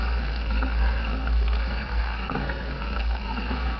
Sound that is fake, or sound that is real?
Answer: fake